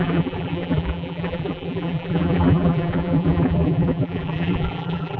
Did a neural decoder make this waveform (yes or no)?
yes